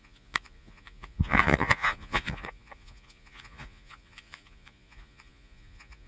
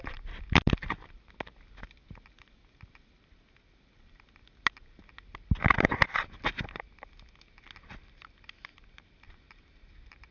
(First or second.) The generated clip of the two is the first